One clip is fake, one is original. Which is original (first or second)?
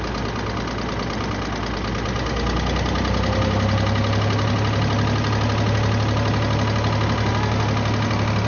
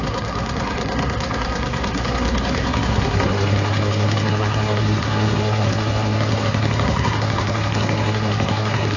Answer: first